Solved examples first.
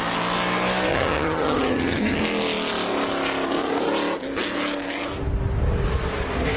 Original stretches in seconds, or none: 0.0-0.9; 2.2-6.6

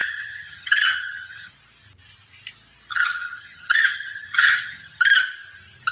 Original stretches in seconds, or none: 1.5-2.9; 5.0-5.9

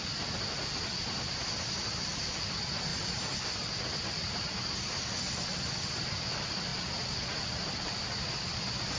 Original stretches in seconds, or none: 0.0-9.0